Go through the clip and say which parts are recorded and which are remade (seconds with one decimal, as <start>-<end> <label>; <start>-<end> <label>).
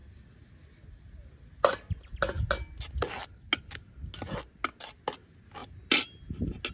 0.0-6.7 recorded